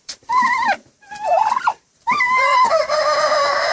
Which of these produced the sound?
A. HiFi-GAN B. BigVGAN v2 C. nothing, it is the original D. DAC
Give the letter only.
B